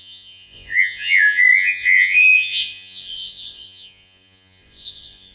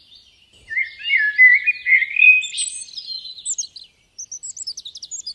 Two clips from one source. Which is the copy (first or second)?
first